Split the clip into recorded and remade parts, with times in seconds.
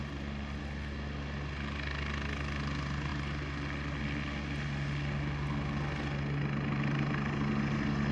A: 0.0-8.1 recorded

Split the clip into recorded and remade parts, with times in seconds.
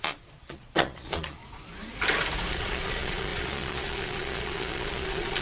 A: 0.0-1.4 remade; 1.4-2.5 recorded; 2.5-5.4 remade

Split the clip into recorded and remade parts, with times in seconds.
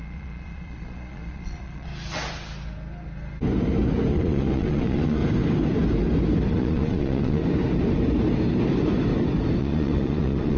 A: 0.0-1.9 remade; 1.9-4.1 recorded; 4.1-5.2 remade; 5.2-6.5 recorded; 6.5-7.4 remade; 7.4-9.6 recorded; 9.6-10.6 remade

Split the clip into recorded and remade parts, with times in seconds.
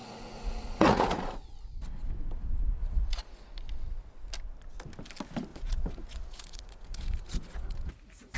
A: 0.0-1.2 remade; 1.2-2.8 recorded; 2.8-3.5 remade; 3.5-5.5 recorded; 5.5-7.9 remade; 7.9-8.4 recorded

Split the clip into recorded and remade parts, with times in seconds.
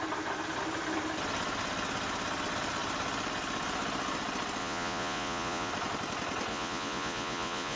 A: 0.0-4.6 recorded; 4.6-5.7 remade; 5.7-6.5 recorded; 6.5-7.8 remade